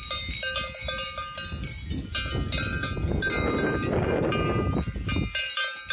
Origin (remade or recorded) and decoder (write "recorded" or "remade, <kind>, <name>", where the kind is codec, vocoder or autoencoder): recorded